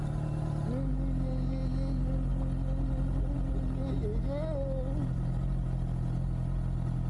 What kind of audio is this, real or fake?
real